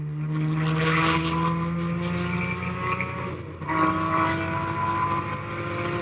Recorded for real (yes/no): yes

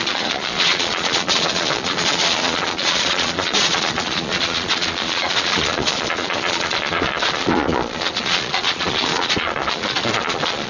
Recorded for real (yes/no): no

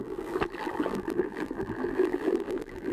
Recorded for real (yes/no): no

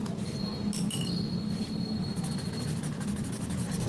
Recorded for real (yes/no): yes